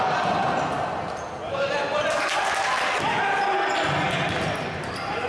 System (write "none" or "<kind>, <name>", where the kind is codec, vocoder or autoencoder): none